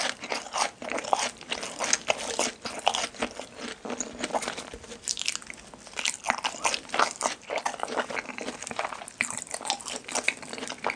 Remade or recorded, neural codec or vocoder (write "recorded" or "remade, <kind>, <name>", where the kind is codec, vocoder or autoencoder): recorded